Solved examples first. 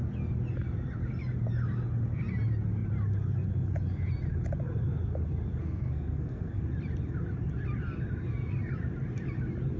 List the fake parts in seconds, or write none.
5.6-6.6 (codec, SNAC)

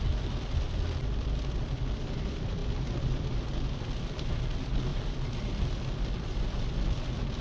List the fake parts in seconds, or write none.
0.0-7.4 (vocoder, BigVGAN v2)

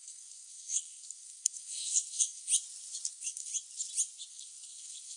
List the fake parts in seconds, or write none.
0.0-2.5 (codec, SNAC); 3.1-3.5; 4.3-5.2

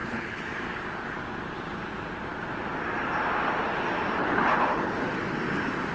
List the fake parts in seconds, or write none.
0.0-0.5 (codec, HILCodec); 4.2-5.0

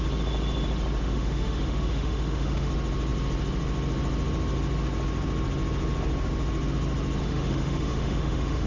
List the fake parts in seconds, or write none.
1.0-2.7 (autoencoder, DAC-VAE); 7.2-8.7

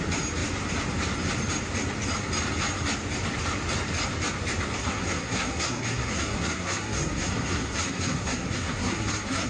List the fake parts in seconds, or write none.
4.8-9.5 (codec, SNAC)

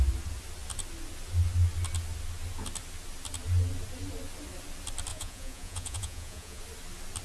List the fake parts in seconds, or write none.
5.1-6.6 (vocoder, Vocos)